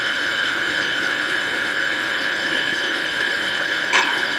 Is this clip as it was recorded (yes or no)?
no